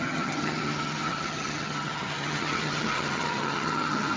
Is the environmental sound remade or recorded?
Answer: remade